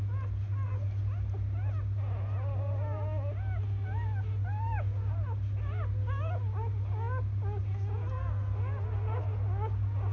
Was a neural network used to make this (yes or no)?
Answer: no